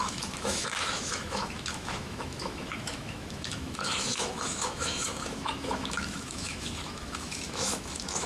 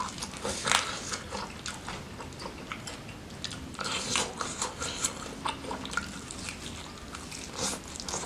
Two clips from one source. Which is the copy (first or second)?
first